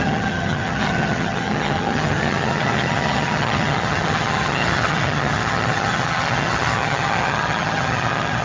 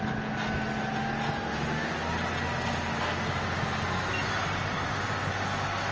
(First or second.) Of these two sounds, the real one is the second